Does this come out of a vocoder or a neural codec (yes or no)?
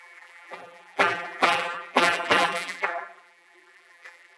yes